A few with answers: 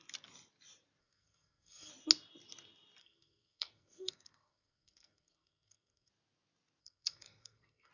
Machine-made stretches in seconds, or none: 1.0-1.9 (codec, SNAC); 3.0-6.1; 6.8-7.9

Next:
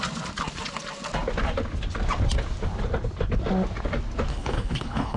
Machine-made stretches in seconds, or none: 4.3-5.2 (codec, HILCodec)

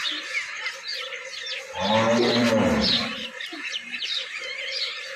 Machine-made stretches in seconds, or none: 0.0-0.9 (vocoder, BigVGAN v2); 2.3-5.2

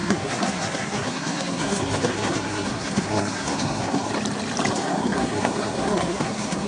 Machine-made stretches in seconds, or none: 0.0-4.1 (codec, SNAC); 4.7-6.7

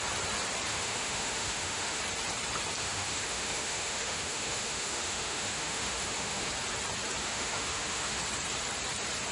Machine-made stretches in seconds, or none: 0.7-2.0 (autoencoder, DAC-VAE); 2.8-6.5; 7.2-8.2